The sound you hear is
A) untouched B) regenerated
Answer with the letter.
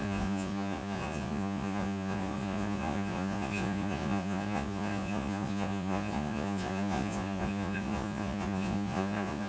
B